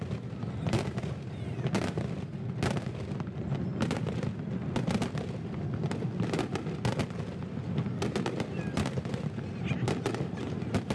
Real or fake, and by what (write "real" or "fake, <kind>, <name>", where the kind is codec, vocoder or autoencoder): real